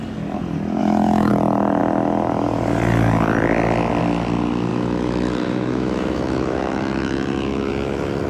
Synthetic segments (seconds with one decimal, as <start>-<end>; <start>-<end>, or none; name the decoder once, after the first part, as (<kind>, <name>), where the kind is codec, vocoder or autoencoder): 0.8-1.3 (autoencoder, DAC-VAE); 4.7-7.7